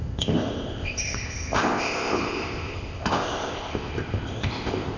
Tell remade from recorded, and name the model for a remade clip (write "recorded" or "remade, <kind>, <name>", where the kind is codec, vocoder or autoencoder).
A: remade, codec, ZipCodec